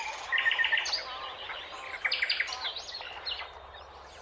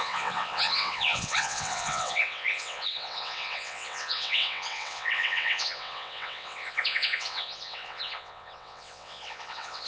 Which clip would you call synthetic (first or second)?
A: second